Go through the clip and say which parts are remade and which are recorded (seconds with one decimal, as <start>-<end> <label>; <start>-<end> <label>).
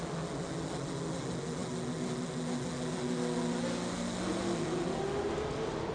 0.0-5.9 recorded